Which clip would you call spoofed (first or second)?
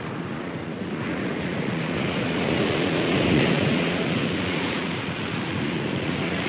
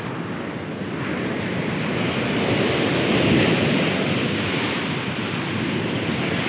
first